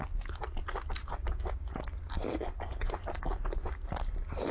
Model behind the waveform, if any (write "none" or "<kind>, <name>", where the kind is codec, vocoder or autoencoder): none